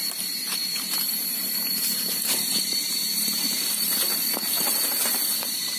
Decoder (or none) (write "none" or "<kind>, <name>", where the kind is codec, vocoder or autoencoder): vocoder, BigVGAN v2